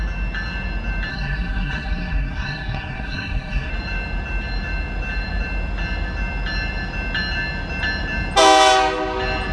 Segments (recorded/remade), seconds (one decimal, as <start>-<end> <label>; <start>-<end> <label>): 0.0-1.1 recorded; 1.1-3.7 remade; 3.7-9.5 recorded